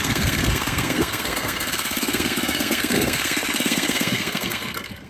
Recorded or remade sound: remade